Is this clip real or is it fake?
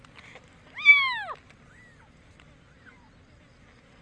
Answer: real